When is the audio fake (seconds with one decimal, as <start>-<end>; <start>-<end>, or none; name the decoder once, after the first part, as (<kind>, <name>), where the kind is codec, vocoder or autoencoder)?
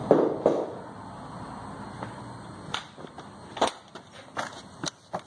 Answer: none